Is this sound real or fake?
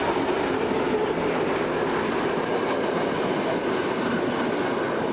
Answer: real